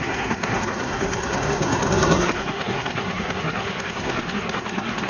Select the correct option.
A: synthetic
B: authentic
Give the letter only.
A